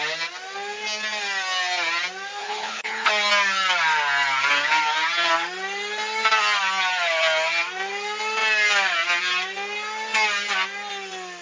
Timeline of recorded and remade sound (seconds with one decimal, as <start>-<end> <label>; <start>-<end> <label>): 0.0-2.4 recorded; 2.4-3.1 remade; 3.1-11.4 recorded